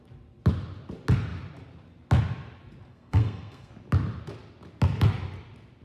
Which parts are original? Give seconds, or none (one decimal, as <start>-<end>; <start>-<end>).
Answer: 0.0-2.9; 3.7-5.8